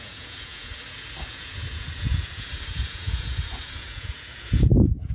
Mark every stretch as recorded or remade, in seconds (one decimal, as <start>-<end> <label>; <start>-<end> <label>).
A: 0.0-5.1 remade